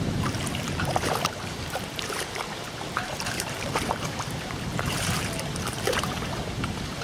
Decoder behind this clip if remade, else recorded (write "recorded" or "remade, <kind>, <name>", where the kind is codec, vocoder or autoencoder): remade, vocoder, BigVGAN v2